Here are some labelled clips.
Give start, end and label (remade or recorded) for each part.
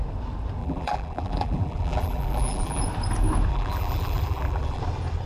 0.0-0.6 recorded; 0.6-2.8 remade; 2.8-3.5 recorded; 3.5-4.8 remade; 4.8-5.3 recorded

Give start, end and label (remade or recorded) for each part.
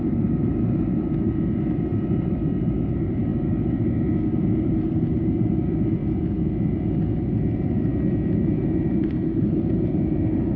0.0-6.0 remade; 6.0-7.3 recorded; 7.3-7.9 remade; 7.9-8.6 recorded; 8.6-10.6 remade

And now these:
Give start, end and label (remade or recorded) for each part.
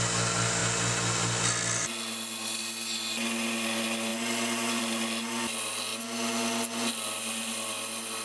0.0-8.2 recorded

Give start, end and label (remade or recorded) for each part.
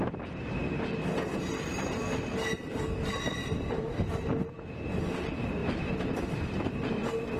0.0-5.6 recorded; 5.6-6.9 remade; 6.9-7.4 recorded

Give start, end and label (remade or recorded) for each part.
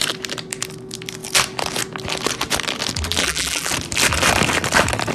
0.0-3.2 recorded; 3.2-3.7 remade; 3.7-5.1 recorded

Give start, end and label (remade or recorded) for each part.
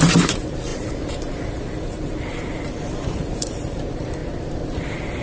0.0-4.2 remade; 4.2-4.8 recorded; 4.8-5.2 remade